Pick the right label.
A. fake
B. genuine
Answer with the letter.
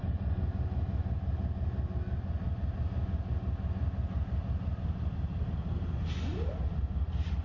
B